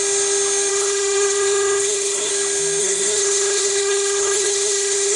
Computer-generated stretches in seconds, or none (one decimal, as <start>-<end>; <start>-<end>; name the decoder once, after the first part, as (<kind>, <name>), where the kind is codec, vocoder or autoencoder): 0.7-2.3 (codec, SNAC); 2.8-5.2